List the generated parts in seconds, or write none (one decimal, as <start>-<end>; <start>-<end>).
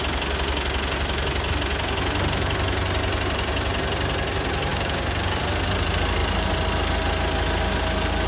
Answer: 4.7-5.4